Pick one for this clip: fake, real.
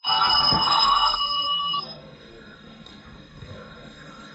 fake